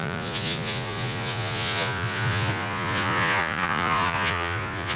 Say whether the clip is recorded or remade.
remade